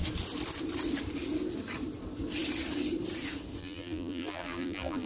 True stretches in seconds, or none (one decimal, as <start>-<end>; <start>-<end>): 0.0-3.6